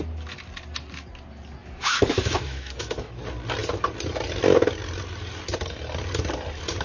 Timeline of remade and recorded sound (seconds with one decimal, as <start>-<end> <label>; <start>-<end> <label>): 0.0-1.6 recorded; 1.6-3.2 remade; 3.2-6.8 recorded